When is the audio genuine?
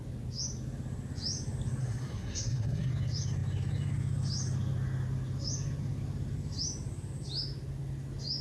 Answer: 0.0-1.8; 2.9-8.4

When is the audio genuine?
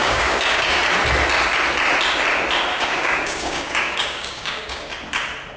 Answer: 0.8-2.7; 4.9-5.6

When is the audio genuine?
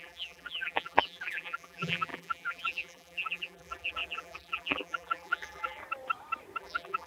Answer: 5.8-6.6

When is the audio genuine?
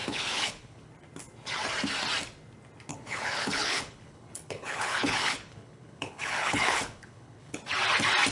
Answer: 0.9-2.9; 7.6-8.3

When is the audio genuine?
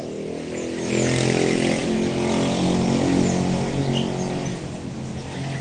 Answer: 0.0-5.6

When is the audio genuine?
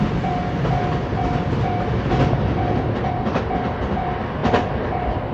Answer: 0.0-5.3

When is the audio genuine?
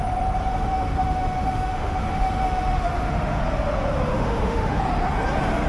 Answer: 0.0-0.5; 3.4-4.1; 4.8-5.7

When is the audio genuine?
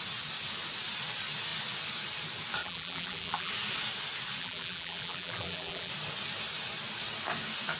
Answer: 0.0-2.6; 3.5-4.4; 5.9-7.8